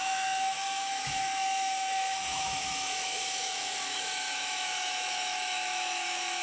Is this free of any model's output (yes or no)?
no